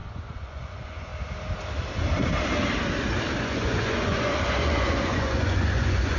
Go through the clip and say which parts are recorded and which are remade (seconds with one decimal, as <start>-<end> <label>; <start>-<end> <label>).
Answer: 0.0-1.1 remade; 1.1-3.4 recorded; 3.4-6.2 remade